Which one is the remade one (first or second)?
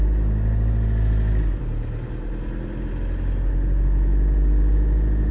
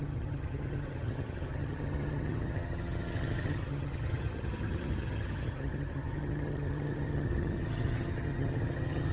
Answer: second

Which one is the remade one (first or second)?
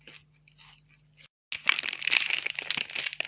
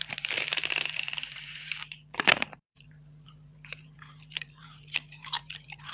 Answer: second